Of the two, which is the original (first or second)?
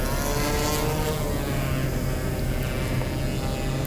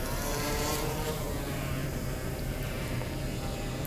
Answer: first